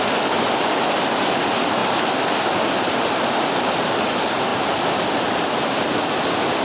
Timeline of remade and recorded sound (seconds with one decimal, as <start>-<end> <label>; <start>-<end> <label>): 0.0-6.6 recorded